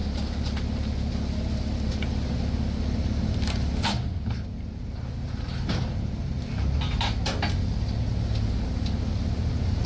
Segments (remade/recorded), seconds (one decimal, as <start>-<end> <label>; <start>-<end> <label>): 0.0-9.9 recorded